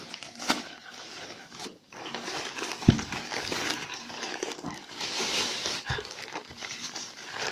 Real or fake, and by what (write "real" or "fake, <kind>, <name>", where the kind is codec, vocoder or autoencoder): fake, codec, DAC